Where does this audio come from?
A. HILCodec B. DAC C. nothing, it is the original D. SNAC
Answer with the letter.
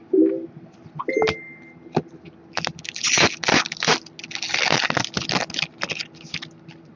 C